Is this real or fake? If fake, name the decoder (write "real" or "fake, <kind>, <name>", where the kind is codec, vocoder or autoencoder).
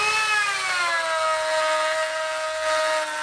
real